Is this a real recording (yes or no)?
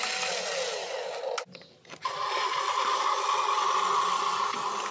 yes